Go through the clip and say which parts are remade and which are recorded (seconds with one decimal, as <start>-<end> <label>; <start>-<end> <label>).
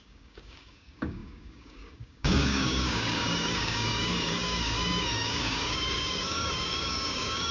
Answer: 0.0-7.5 remade